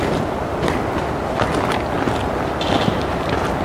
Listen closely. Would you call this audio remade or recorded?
recorded